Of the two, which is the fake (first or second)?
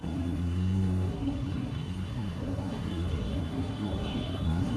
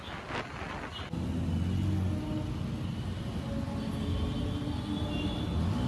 first